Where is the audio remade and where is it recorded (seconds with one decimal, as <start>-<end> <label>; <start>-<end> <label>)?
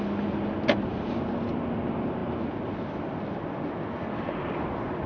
0.0-5.1 recorded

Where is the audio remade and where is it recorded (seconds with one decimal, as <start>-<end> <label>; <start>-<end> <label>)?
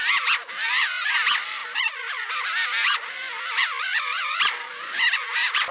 0.0-5.7 recorded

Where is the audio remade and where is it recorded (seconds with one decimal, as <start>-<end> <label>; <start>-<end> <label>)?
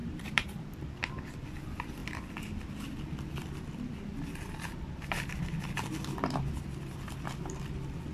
0.0-0.9 remade; 0.9-8.1 recorded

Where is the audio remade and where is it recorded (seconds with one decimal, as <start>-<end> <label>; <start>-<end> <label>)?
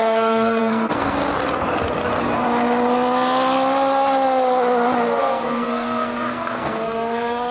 0.0-1.2 remade; 1.2-5.2 recorded; 5.2-7.5 remade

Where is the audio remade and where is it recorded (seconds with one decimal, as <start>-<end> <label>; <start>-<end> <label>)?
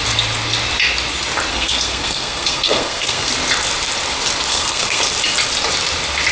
0.0-1.5 recorded; 1.5-3.3 remade; 3.3-4.5 recorded; 4.5-5.0 remade; 5.0-6.3 recorded